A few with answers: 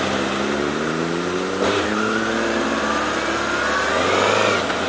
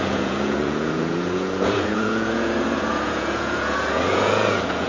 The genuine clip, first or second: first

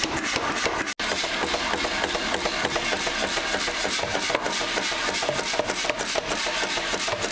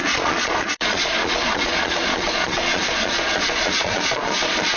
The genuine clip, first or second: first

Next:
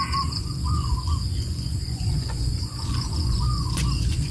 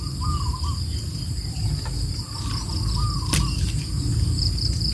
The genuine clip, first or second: second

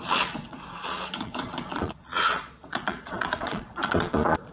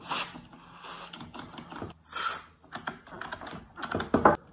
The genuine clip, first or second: second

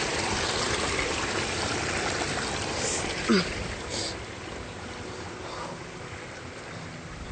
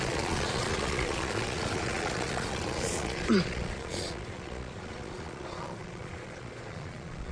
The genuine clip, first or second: first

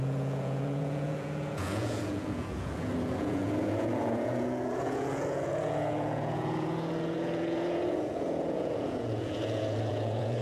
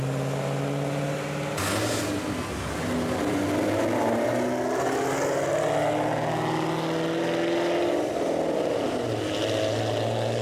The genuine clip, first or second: second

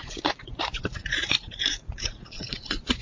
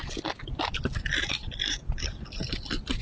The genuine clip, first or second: second